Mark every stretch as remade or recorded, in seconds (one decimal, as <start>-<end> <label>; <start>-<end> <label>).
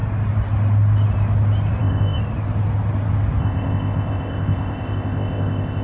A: 0.0-1.8 recorded; 1.8-2.2 remade; 2.2-3.4 recorded; 3.4-5.8 remade